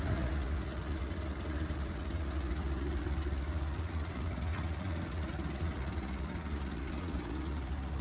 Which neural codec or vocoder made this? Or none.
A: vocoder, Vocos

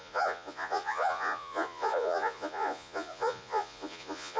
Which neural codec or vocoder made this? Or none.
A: vocoder, Vocos